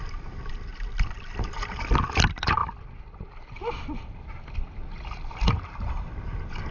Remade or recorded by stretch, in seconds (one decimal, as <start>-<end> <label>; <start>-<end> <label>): 0.0-0.7 remade; 0.7-1.4 recorded; 1.4-2.6 remade; 2.6-5.9 recorded; 5.9-6.7 remade